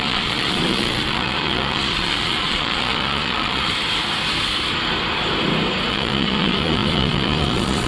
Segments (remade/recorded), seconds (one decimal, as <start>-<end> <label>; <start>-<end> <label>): 0.0-3.7 remade; 3.7-5.9 recorded; 5.9-7.9 remade